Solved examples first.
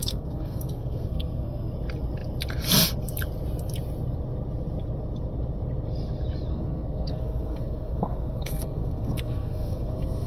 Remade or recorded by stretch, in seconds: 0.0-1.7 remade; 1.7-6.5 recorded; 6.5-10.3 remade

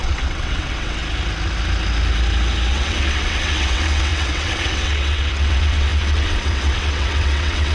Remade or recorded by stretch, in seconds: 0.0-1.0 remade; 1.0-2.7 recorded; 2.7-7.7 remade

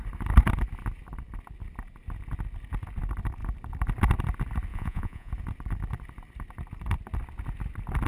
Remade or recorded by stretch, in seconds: 0.0-4.7 recorded; 4.7-5.3 remade; 5.3-8.1 recorded